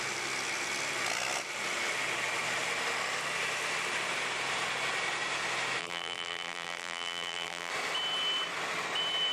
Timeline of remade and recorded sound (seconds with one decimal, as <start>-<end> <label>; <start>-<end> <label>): 0.0-5.8 recorded; 5.8-7.7 remade; 7.7-9.3 recorded